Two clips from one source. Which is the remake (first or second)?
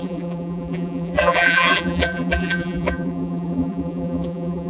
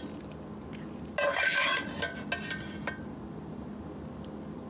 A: first